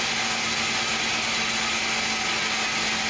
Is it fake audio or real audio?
real